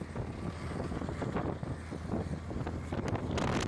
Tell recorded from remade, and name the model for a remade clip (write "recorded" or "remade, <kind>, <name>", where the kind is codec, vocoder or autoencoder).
recorded